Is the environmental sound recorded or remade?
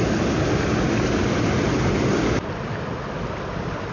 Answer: recorded